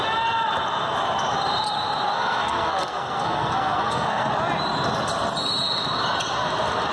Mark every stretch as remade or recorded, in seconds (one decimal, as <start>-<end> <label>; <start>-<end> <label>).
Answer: 0.0-2.1 recorded; 2.1-4.3 remade; 4.3-6.9 recorded